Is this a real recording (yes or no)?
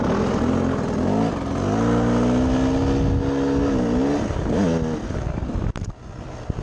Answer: yes